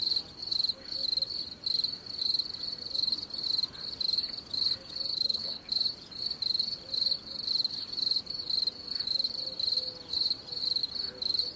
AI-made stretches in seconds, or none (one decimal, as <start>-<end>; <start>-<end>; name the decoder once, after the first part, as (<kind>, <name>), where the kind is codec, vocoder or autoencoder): 5.1-5.7 (codec, HILCodec)